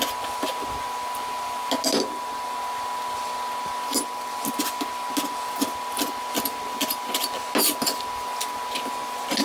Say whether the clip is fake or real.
real